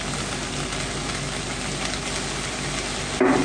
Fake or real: real